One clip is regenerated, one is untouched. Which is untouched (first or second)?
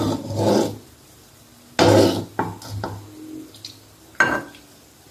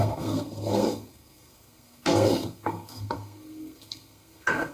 first